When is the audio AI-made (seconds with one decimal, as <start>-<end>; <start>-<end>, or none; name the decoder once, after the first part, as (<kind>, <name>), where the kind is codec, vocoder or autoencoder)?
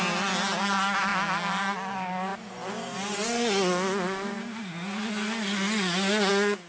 none